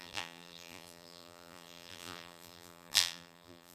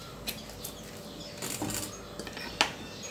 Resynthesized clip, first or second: first